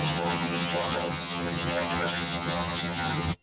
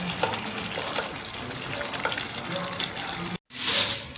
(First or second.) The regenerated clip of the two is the first